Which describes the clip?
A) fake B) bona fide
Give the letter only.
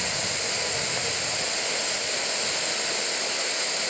B